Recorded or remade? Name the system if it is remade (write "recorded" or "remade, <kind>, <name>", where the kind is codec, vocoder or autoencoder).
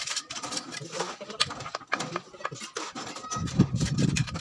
recorded